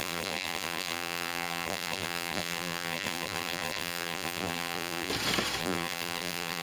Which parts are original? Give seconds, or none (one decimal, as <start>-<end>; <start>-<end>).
5.1-5.6